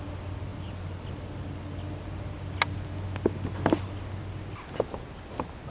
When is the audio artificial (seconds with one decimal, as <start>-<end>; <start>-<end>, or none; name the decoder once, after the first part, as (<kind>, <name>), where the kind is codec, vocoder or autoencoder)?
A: none